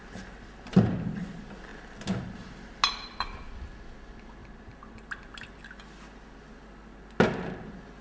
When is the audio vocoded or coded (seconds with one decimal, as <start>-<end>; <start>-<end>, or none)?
none